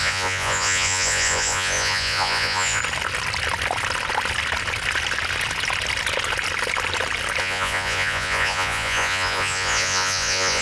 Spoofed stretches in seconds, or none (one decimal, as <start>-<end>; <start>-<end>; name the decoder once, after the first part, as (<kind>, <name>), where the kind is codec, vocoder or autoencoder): 0.0-2.8 (vocoder, Vocos); 7.4-10.6